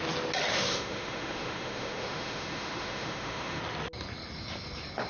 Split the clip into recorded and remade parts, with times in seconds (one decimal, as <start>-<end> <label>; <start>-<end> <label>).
0.0-0.5 recorded; 0.5-3.6 remade; 3.6-5.1 recorded